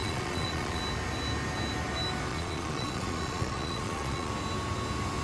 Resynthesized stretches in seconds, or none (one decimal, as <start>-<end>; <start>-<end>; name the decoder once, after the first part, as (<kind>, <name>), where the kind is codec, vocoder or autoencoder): 0.0-0.8 (vocoder, Vocos); 2.3-4.3